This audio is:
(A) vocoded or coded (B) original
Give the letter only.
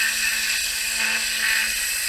B